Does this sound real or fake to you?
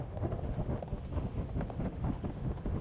fake